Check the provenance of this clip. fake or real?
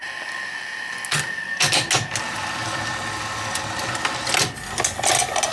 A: real